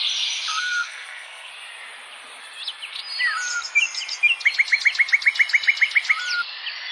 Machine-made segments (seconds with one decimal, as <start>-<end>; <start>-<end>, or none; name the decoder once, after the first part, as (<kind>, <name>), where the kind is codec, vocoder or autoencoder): 0.5-1.5 (codec, SNAC)